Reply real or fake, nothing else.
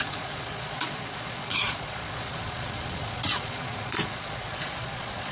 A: fake